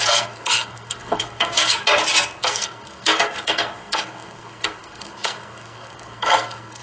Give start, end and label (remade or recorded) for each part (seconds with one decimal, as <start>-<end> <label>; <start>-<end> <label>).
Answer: 0.0-1.8 remade; 1.8-2.4 recorded; 2.4-6.8 remade